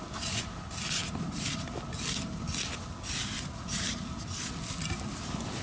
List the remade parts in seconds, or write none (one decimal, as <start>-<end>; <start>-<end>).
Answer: none